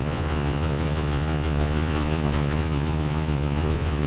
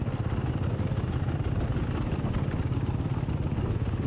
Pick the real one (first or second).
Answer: second